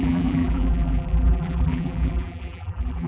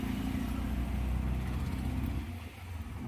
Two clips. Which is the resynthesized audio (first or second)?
first